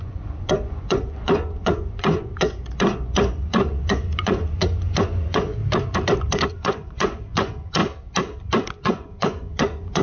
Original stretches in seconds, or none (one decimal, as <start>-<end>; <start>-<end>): 5.6-6.5; 7.8-8.8